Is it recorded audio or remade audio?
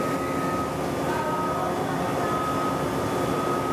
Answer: recorded